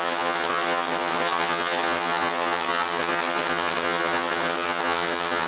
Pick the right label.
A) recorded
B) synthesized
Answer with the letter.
B